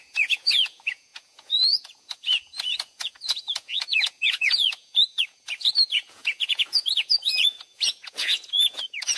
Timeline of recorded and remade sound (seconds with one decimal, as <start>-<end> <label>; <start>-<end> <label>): 0.0-9.2 remade